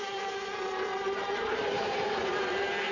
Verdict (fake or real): fake